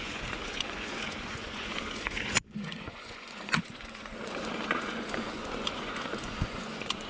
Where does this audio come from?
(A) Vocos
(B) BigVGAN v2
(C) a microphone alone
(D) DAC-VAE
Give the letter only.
A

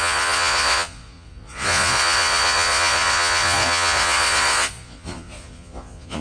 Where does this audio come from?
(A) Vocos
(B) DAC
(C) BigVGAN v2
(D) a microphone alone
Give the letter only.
A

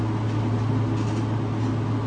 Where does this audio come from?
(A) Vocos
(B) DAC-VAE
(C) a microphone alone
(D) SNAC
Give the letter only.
C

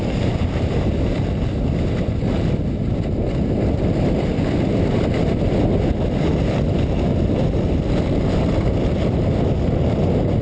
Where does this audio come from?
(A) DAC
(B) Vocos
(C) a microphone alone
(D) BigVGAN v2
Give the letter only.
C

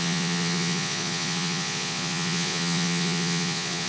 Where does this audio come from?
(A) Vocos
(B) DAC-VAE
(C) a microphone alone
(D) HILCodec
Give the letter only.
A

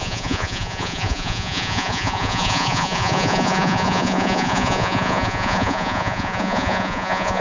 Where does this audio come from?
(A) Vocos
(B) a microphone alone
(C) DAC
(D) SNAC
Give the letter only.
A